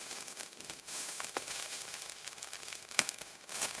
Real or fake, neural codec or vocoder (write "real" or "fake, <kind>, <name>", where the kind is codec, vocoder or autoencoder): fake, autoencoder, DAC-VAE